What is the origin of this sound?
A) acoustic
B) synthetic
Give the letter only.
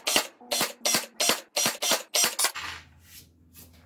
A